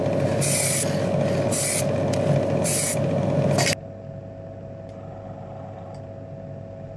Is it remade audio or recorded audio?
recorded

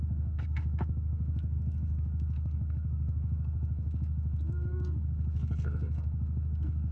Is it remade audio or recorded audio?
remade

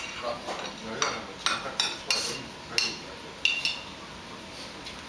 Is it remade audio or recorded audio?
recorded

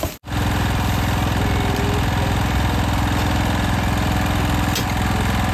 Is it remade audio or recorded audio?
recorded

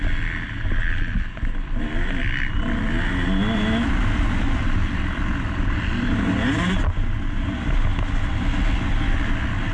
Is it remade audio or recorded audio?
recorded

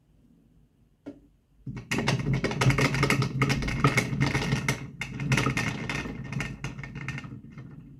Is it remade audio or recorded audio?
recorded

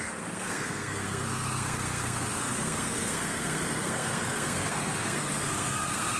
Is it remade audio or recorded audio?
remade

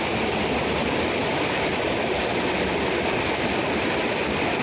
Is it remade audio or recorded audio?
recorded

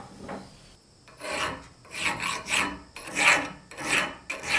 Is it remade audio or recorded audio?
recorded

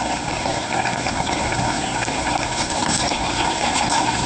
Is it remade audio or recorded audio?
remade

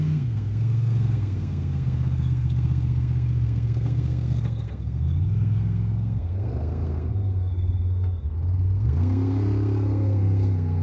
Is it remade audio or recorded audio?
remade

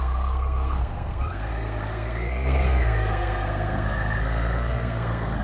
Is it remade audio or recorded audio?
remade